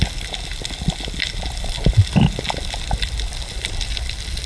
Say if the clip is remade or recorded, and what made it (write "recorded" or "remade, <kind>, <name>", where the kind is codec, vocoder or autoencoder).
recorded